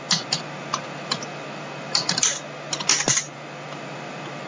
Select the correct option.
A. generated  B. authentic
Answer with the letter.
B